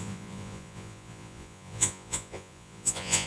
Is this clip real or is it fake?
fake